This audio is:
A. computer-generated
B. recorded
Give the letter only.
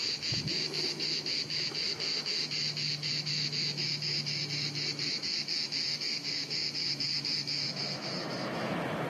A